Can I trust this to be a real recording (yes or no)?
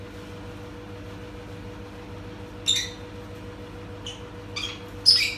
yes